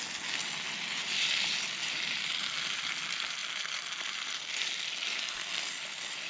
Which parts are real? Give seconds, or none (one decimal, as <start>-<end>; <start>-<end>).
0.0-6.3